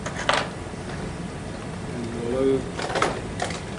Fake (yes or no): no